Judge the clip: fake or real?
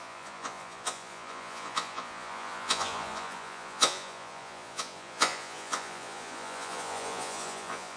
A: fake